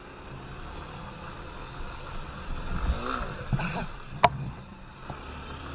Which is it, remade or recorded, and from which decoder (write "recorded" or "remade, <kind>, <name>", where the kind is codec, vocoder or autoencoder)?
remade, vocoder, BigVGAN v2